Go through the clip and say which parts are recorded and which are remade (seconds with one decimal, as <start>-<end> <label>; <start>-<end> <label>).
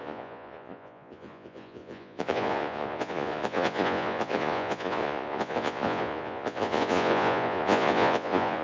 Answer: 0.0-8.6 remade